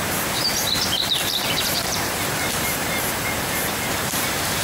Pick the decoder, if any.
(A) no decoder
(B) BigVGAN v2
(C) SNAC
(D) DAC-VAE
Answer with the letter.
B